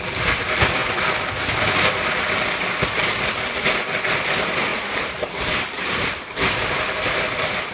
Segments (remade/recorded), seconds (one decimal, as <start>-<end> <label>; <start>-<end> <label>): 0.0-4.7 recorded; 4.7-6.3 remade; 6.3-7.7 recorded